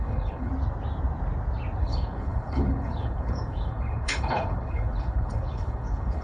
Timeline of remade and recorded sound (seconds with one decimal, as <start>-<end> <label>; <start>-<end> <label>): 0.0-0.5 remade; 0.5-1.8 recorded; 1.8-6.2 remade